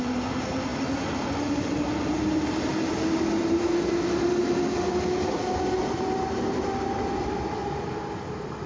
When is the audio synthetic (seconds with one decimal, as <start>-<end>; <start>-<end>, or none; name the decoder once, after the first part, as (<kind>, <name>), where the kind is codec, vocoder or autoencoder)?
none